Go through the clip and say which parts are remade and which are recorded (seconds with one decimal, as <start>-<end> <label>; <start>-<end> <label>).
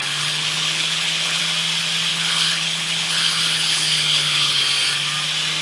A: 0.0-1.4 remade; 1.4-2.1 recorded; 2.1-4.6 remade; 4.6-5.6 recorded